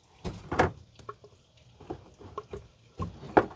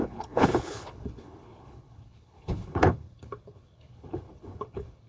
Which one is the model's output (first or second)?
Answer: second